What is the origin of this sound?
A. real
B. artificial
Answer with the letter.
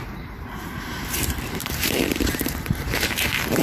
B